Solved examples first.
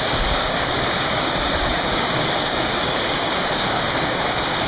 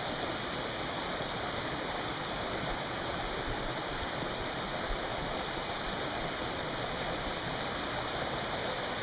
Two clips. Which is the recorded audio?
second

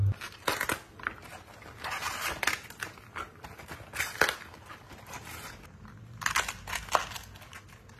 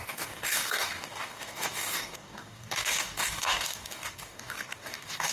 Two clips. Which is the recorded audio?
first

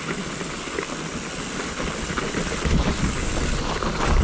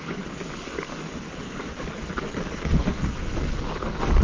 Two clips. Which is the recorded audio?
first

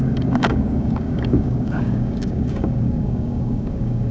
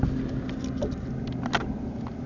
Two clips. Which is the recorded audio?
second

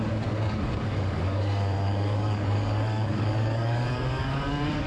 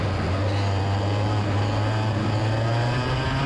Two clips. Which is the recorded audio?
second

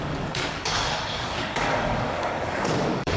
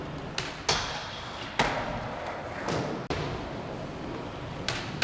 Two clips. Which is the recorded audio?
second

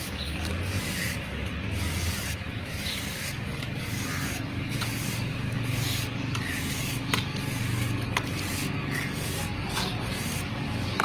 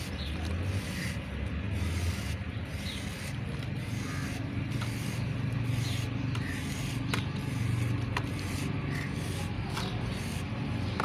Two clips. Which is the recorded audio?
second